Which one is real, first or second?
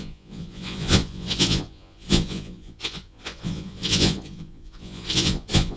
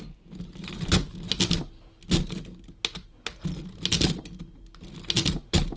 second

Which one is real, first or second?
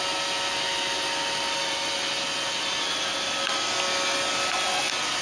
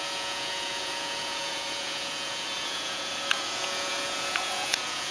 first